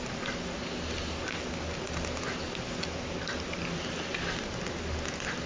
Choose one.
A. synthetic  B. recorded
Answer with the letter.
B